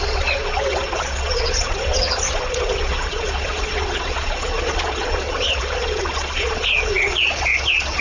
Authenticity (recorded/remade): remade